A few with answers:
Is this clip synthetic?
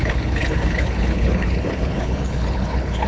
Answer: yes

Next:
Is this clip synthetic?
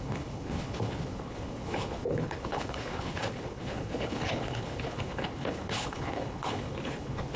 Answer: yes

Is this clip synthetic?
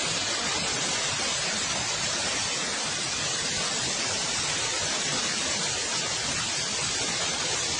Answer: no